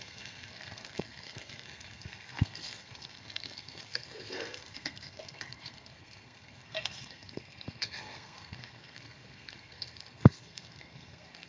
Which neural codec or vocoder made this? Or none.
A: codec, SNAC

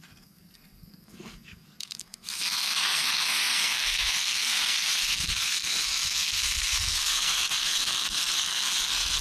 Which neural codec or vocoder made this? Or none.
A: codec, SNAC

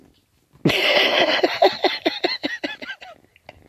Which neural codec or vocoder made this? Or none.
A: none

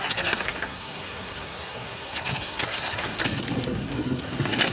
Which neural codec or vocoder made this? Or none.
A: codec, SNAC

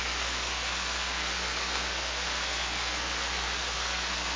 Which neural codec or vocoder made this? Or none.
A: codec, SNAC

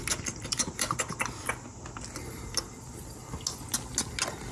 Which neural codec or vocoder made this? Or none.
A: none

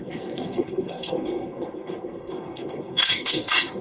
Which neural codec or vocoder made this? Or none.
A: codec, SNAC